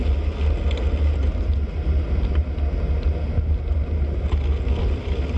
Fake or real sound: real